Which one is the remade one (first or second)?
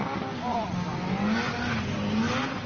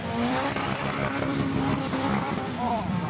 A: second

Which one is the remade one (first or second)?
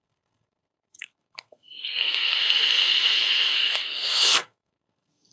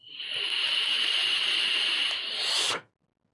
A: first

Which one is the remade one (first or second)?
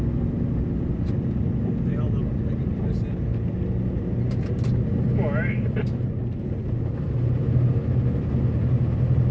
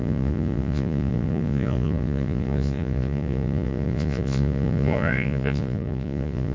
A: second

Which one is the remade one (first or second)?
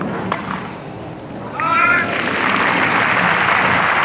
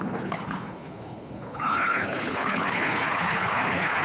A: second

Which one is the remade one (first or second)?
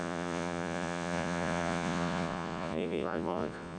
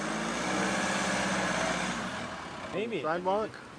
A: first